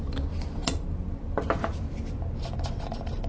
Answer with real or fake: real